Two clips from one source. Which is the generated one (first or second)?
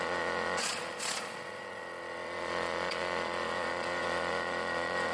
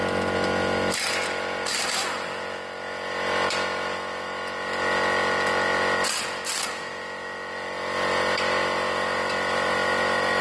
first